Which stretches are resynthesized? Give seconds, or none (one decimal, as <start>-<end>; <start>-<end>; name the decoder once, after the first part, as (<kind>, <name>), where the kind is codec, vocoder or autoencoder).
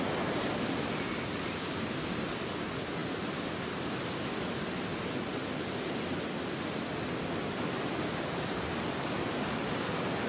none